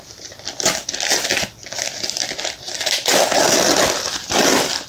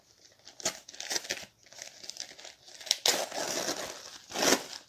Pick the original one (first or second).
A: second